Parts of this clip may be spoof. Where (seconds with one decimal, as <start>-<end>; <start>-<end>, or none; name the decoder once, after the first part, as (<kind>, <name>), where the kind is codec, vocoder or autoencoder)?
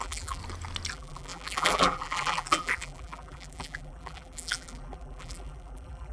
0.0-0.4 (vocoder, BigVGAN v2); 0.9-6.1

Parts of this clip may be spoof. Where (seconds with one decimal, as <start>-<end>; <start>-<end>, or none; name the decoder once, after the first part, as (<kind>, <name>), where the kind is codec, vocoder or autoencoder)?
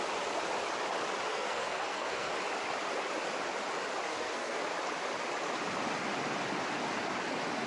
1.3-2.3 (codec, SNAC); 4.1-4.6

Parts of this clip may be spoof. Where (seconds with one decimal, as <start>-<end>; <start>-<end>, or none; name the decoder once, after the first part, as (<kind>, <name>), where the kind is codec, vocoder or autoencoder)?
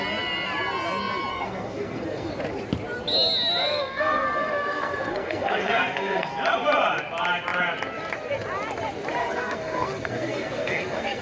1.3-2.3 (codec, SNAC); 3.7-6.3; 9.2-11.2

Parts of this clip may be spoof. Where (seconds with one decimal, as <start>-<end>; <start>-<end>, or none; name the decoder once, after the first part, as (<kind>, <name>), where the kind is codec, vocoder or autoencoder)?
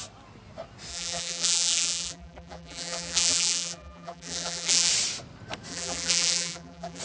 0.9-4.9 (vocoder, BigVGAN v2); 5.7-7.0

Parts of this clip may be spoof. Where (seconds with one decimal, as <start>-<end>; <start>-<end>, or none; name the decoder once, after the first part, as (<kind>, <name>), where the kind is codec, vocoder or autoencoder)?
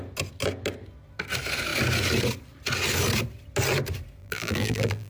4.2-5.1 (vocoder, BigVGAN v2)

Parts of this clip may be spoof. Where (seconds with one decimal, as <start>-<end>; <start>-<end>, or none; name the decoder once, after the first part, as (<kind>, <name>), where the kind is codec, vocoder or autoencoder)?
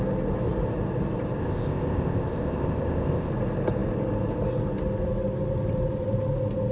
1.4-3.3 (codec, ZipCodec)